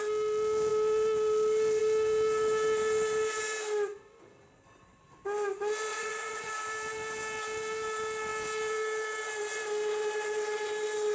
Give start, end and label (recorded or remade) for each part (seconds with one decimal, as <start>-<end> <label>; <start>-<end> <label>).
0.0-5.9 recorded; 5.9-6.5 remade; 6.5-11.1 recorded